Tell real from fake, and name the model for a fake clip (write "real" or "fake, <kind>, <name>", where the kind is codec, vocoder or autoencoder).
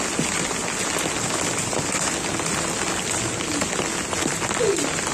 real